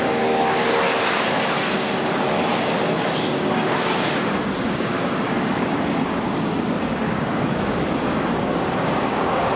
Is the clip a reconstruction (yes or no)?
yes